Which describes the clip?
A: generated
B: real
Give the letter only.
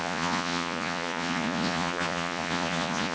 A